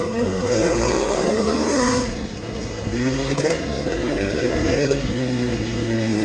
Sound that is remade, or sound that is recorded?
remade